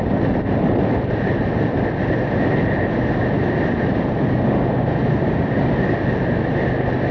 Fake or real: real